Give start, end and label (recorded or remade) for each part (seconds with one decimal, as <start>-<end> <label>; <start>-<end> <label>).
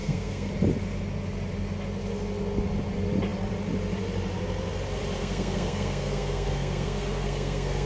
0.0-0.5 remade; 0.5-5.2 recorded; 5.2-7.9 remade